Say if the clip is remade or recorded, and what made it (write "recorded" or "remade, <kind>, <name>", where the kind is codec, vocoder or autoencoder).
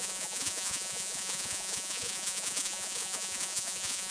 remade, vocoder, Vocos